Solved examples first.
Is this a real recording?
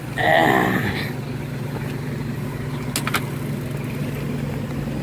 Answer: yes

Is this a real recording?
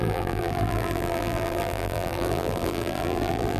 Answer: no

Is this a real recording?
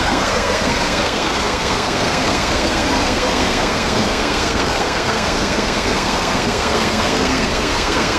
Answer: no